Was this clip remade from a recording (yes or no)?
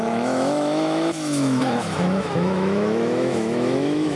yes